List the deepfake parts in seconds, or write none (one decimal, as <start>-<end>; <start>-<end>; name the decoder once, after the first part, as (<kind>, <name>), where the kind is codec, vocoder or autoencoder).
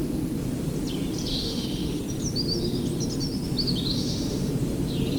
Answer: 1.3-2.0 (autoencoder, DAC-VAE); 3.9-4.5